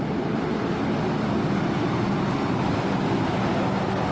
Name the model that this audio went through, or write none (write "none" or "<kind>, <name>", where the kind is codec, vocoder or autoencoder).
none